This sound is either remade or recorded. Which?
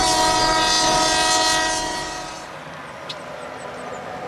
recorded